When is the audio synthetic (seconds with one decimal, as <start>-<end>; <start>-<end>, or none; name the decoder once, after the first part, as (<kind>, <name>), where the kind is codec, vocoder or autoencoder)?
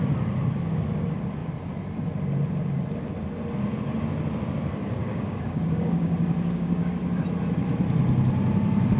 5.0-7.2 (codec, DAC)